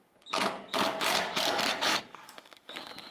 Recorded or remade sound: remade